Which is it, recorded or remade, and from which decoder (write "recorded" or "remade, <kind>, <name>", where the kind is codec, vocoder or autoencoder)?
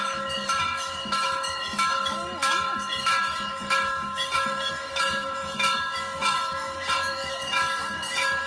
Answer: remade, autoencoder, DAC-VAE